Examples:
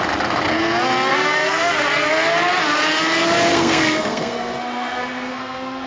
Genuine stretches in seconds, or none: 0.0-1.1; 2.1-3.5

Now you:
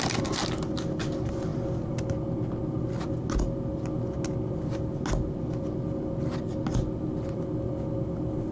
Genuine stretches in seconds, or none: 0.0-8.5

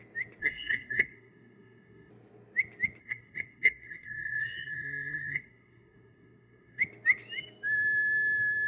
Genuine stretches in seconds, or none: 0.0-0.4; 2.1-3.0; 6.8-8.7

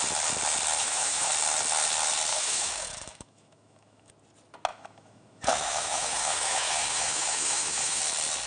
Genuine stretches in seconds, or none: 0.0-0.8; 1.3-2.3; 4.1-4.7; 8.0-8.5